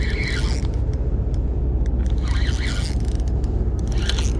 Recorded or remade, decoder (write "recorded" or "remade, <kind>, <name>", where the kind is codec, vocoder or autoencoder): recorded